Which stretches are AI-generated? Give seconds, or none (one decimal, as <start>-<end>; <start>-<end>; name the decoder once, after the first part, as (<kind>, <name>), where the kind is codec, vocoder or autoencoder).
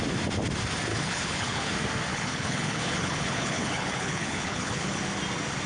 0.9-1.7 (codec, HILCodec); 2.1-5.0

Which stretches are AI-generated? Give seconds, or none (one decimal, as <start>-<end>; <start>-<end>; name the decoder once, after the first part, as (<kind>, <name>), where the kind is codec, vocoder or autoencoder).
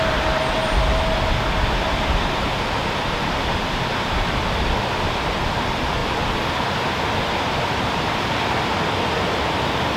none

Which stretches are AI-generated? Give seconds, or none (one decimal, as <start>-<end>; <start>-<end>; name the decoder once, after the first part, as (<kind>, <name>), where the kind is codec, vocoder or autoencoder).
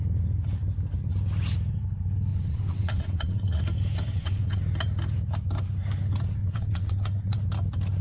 2.3-3.6 (vocoder, WaveNeXt); 4.1-4.6; 6.4-7.4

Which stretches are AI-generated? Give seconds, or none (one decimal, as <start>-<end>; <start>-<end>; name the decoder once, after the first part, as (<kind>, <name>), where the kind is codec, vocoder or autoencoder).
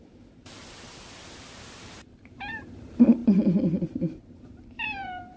0.0-0.6 (vocoder, BigVGAN v2); 1.2-3.2; 4.2-5.4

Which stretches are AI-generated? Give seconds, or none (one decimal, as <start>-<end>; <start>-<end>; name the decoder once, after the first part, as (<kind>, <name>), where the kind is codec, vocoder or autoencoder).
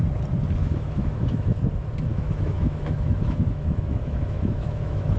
0.6-1.6 (autoencoder, DAC-VAE); 2.1-5.2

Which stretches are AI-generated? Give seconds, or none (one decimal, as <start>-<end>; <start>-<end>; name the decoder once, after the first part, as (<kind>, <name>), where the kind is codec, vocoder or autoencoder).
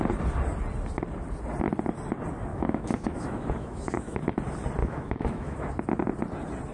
2.5-4.2 (autoencoder, DAC-VAE); 4.8-5.7